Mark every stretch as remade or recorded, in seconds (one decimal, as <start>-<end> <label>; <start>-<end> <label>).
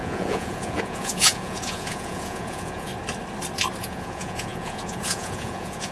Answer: 0.0-2.9 remade; 2.9-3.8 recorded; 3.8-5.9 remade